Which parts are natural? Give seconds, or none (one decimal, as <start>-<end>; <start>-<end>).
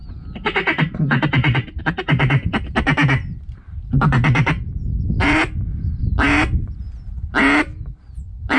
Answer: 0.0-8.6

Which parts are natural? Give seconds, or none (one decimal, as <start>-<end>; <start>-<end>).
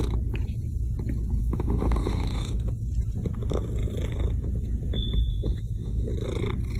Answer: 0.0-1.4; 2.7-5.3; 6.1-6.8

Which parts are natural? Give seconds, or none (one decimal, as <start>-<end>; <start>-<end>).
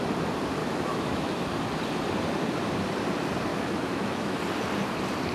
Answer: 0.0-0.6; 1.5-3.5; 4.4-5.3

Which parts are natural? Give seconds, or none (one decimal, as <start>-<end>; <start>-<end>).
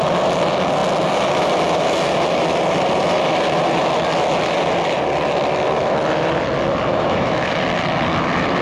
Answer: 0.0-6.9; 7.5-8.6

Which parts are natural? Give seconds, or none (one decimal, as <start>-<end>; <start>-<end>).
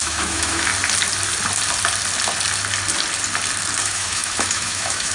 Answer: 0.7-3.8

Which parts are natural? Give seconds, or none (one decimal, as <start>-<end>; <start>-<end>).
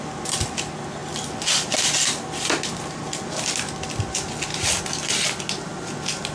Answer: 0.0-6.3